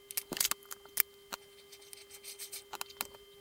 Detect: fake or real real